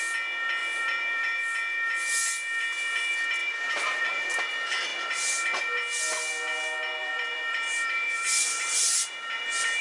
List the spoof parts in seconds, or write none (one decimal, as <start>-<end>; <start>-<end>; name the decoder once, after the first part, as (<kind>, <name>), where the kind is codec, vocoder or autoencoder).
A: 0.6-1.4 (vocoder, BigVGAN v2); 3.4-4.4; 7.0-9.4